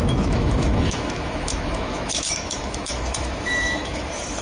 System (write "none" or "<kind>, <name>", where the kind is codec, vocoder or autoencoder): autoencoder, DAC-VAE